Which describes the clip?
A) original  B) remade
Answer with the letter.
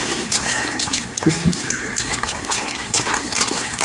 B